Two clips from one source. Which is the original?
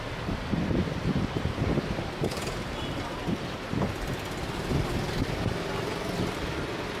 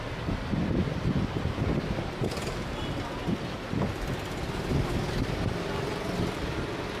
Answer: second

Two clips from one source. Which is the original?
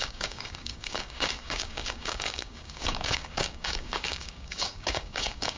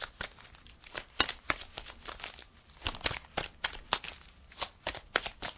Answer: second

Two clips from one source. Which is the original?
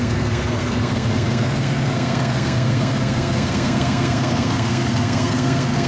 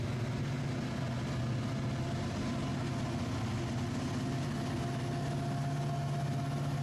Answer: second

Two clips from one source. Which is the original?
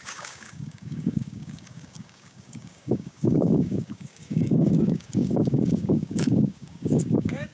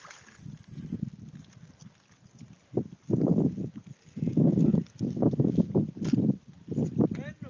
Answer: second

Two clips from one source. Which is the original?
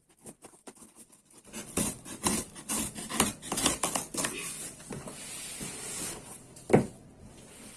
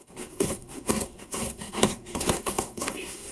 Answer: first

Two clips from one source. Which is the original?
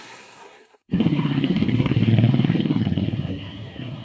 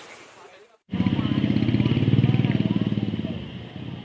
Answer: second